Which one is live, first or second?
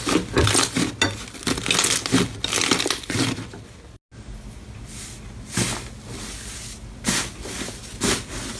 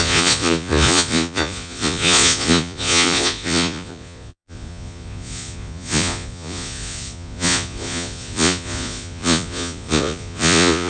first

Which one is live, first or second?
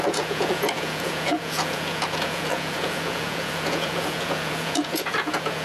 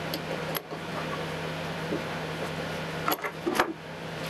second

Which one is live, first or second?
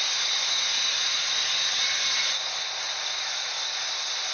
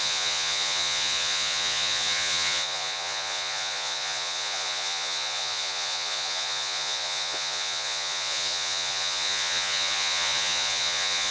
first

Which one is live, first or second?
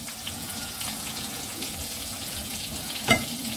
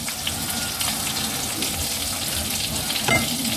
second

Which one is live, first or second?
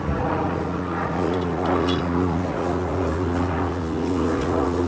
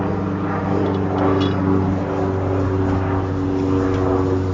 second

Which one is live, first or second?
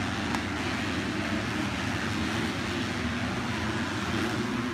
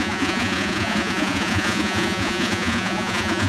first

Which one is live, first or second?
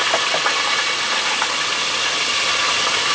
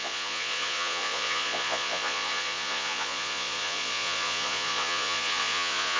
first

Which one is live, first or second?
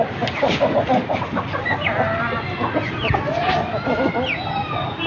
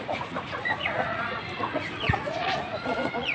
first